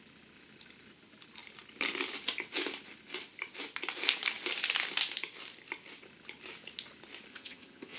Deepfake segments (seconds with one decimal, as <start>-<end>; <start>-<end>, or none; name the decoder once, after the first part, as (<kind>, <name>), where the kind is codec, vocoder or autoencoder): 7.3-8.0 (vocoder, HiFi-GAN)